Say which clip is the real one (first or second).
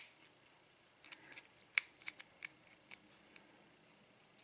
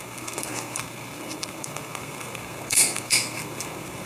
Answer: first